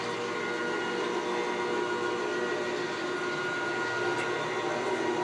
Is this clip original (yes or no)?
yes